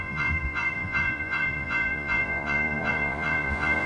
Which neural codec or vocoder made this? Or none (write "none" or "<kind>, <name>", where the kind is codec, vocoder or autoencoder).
vocoder, Vocos